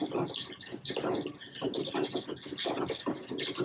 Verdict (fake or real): real